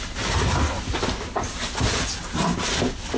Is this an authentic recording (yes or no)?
yes